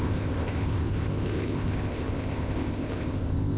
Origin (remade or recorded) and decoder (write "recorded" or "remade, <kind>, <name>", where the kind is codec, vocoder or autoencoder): remade, codec, ZipCodec